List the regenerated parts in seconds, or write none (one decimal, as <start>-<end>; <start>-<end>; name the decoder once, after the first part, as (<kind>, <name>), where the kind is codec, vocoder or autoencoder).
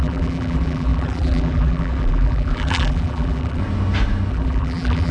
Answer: 0.0-3.6 (vocoder, BigVGAN v2); 4.3-5.1